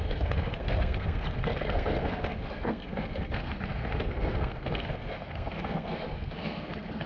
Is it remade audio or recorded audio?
remade